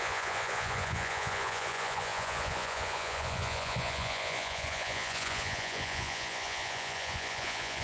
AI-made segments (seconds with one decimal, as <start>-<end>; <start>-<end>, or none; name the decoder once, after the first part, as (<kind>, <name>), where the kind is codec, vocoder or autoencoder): 0.0-7.8 (vocoder, Vocos)